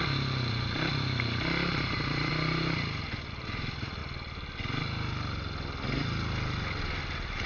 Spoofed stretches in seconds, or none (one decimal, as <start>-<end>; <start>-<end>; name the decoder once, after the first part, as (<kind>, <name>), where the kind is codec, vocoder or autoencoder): 0.0-2.3 (vocoder, BigVGAN v2); 3.3-4.0; 7.0-7.5